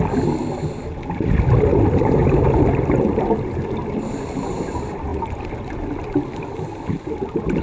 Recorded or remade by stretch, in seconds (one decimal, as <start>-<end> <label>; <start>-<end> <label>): 0.0-7.6 recorded